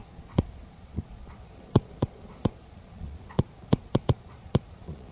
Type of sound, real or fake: fake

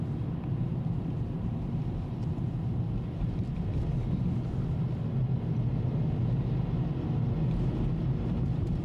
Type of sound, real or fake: real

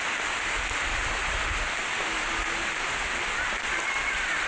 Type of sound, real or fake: real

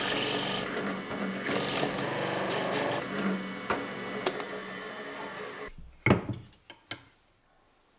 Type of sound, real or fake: real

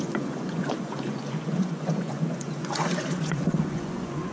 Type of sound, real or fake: fake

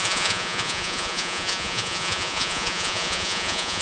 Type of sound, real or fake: fake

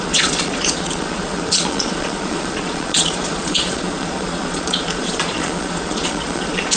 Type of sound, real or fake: fake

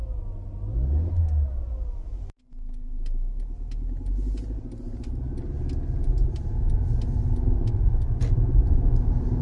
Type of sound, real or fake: real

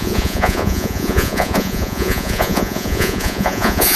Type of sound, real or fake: fake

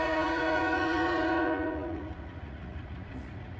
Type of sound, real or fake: fake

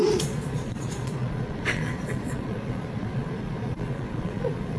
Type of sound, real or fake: fake